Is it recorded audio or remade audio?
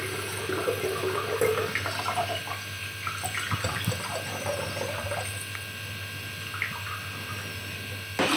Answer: recorded